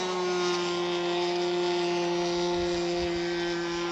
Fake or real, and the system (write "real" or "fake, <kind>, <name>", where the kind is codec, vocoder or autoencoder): real